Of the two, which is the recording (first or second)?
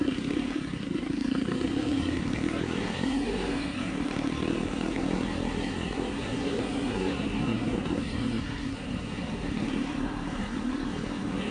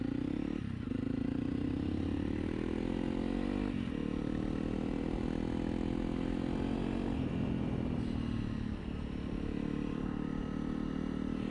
second